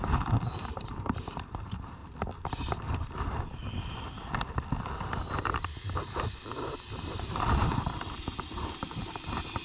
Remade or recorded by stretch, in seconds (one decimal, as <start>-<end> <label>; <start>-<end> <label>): 0.0-2.0 remade; 2.0-5.4 recorded; 5.4-9.6 remade